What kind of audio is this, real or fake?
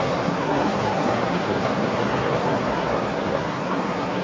fake